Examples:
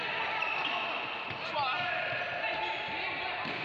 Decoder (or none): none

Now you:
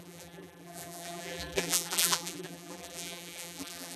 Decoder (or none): vocoder, BigVGAN v2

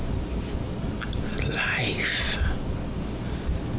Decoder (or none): none